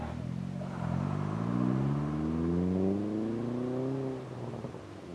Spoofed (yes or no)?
no